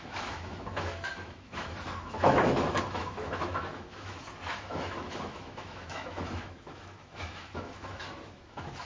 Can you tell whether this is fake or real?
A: fake